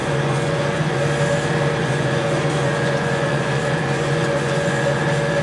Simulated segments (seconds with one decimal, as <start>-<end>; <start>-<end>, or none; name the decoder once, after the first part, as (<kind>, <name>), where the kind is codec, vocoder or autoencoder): 0.0-1.0 (vocoder, Vocos); 1.8-5.0